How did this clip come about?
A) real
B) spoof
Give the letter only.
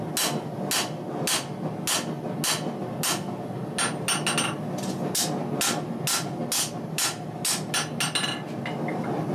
A